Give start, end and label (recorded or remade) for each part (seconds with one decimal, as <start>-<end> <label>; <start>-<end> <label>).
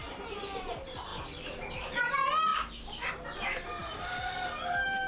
0.0-5.1 recorded